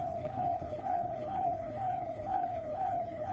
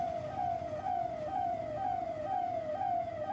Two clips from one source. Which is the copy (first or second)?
first